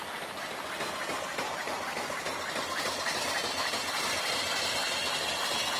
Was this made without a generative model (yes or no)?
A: yes